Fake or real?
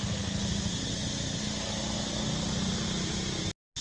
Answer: real